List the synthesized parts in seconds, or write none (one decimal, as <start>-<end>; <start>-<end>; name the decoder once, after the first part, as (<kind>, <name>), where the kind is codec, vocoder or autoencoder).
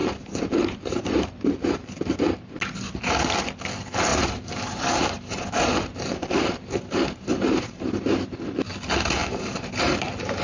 0.0-1.9 (vocoder, BigVGAN v2); 4.1-8.3; 9.2-10.4